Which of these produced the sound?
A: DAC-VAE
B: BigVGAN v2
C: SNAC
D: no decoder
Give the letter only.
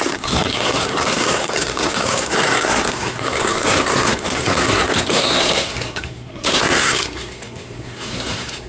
C